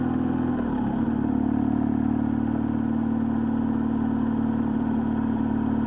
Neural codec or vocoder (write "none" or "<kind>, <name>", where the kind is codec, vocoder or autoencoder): none